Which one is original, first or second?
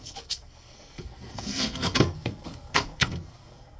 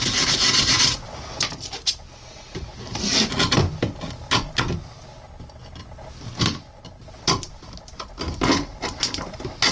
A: second